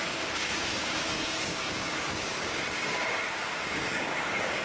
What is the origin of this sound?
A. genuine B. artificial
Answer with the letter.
B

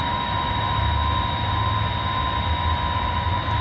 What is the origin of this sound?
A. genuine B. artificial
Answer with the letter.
A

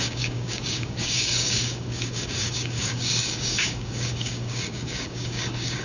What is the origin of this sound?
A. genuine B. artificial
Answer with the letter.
B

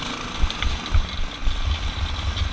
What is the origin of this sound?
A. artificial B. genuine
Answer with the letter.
B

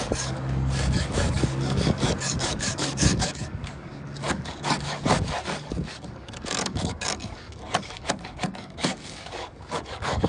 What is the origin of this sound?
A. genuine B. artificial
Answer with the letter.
B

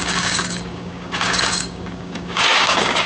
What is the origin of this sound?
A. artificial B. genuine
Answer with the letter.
A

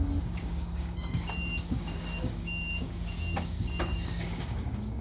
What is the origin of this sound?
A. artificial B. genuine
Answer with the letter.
A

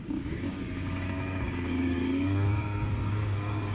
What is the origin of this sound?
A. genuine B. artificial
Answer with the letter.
B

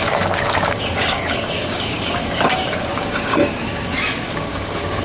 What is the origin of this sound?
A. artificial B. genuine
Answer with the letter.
A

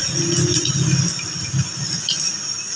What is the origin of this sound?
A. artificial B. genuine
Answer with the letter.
B